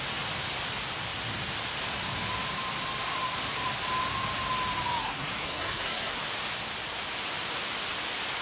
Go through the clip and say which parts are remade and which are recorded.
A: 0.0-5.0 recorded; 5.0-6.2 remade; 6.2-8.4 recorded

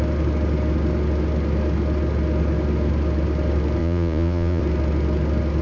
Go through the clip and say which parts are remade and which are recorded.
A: 0.0-3.8 recorded; 3.8-4.6 remade; 4.6-5.6 recorded

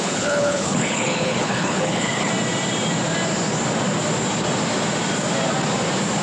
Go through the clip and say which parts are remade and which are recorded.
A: 0.0-2.3 remade; 2.3-6.2 recorded

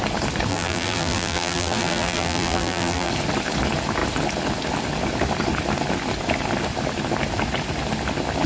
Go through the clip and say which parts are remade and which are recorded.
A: 0.0-0.5 recorded; 0.5-3.1 remade; 3.1-8.5 recorded

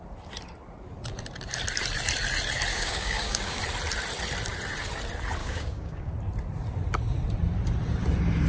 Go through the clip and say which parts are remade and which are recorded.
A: 0.0-2.7 recorded; 2.7-3.6 remade; 3.6-5.4 recorded; 5.4-6.1 remade; 6.1-8.5 recorded